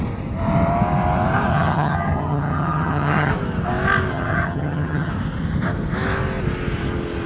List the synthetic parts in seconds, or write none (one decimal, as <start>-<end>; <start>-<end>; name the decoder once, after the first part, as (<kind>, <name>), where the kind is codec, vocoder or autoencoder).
1.5-3.3 (vocoder, HiFi-GAN); 4.1-5.1